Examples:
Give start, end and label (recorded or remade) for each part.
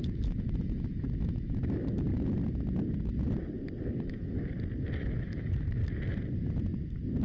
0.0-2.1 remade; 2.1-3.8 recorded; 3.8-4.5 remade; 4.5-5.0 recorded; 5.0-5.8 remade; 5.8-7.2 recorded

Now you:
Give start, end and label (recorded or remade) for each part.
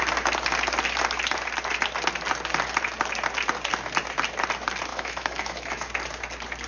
0.0-4.9 recorded; 4.9-5.9 remade; 5.9-6.7 recorded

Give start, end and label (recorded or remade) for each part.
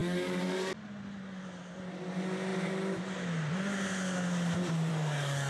0.0-0.7 remade; 0.7-4.9 recorded; 4.9-5.5 remade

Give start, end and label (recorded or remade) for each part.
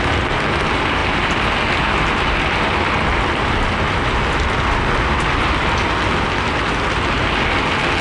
0.0-8.0 recorded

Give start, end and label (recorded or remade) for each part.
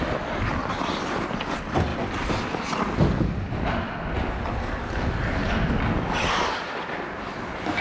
0.0-7.8 recorded